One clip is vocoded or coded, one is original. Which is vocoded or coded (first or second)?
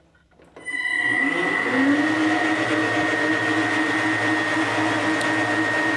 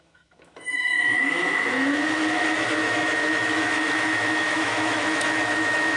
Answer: second